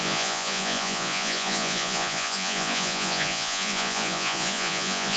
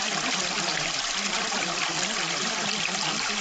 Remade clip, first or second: first